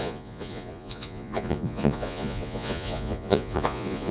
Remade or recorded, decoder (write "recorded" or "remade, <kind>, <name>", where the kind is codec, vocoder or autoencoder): remade, vocoder, Vocos